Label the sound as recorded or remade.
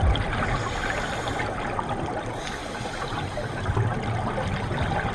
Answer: recorded